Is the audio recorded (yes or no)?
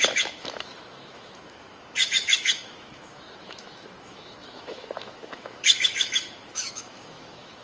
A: no